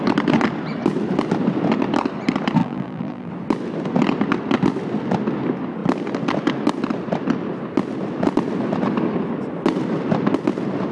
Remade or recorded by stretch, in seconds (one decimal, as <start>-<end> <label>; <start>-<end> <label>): 0.0-2.6 recorded; 2.6-3.3 remade; 3.3-10.9 recorded